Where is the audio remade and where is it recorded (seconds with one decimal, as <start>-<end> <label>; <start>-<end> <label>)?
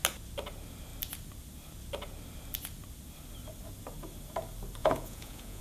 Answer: 0.0-4.8 recorded; 4.8-5.6 remade